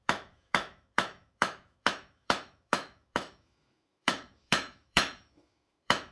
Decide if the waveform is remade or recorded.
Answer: remade